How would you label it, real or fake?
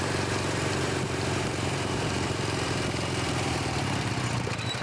fake